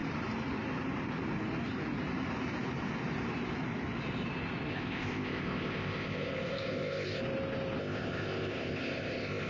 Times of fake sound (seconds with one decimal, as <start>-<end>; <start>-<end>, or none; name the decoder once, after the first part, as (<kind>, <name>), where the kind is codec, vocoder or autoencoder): 4.7-7.2 (codec, ZipCodec); 7.8-9.5